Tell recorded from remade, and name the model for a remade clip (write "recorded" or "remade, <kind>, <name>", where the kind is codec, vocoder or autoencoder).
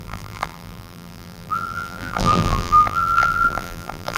remade, vocoder, BigVGAN v2